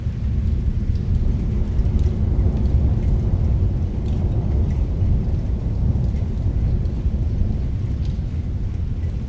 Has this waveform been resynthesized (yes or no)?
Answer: no